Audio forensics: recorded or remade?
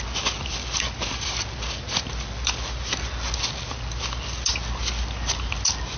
recorded